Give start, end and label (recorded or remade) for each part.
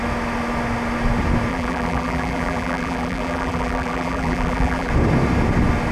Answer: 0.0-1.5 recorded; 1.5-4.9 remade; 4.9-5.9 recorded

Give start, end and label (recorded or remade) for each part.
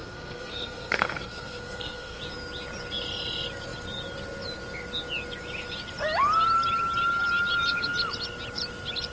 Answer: 0.0-2.2 remade; 2.2-9.1 recorded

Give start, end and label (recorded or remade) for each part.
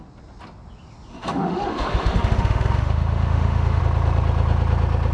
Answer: 0.0-1.1 recorded; 1.1-3.8 remade; 3.8-5.1 recorded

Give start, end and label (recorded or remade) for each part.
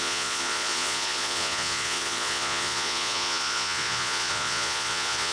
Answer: 0.0-5.3 remade